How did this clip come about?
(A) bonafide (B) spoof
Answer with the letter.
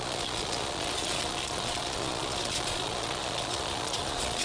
B